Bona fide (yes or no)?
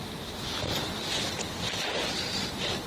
yes